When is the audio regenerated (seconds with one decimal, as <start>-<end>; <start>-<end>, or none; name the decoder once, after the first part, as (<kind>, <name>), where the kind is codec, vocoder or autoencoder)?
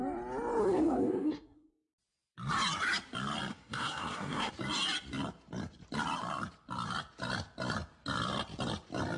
0.6-1.7 (codec, SNAC); 3.5-4.5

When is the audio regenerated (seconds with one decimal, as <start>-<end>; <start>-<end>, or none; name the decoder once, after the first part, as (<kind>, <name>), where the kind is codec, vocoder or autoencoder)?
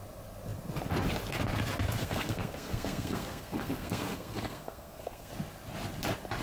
2.0-5.3 (codec, SNAC)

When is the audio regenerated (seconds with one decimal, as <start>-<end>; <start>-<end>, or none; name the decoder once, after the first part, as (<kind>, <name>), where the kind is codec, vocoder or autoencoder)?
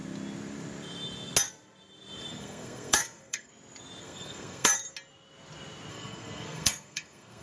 2.3-3.5 (codec, SNAC); 4.0-4.7; 5.9-7.4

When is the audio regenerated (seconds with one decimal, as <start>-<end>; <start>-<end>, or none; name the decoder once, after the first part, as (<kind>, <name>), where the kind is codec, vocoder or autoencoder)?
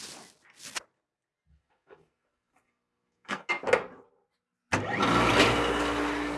1.5-3.5 (codec, SNAC)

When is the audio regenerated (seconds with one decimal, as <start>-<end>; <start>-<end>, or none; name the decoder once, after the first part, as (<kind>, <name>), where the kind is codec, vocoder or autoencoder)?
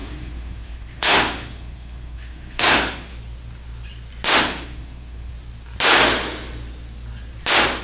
0.0-3.1 (codec, SNAC); 4.4-5.3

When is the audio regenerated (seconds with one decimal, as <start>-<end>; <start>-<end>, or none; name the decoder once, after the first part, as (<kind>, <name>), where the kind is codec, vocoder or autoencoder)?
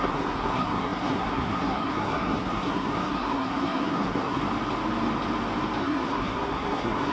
0.0-4.4 (codec, SNAC); 5.8-7.1